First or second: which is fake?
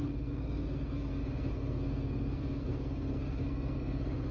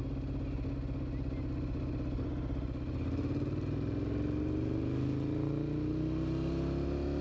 first